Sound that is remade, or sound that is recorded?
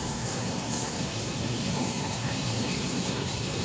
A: remade